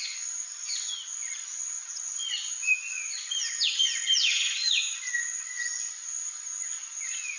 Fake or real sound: fake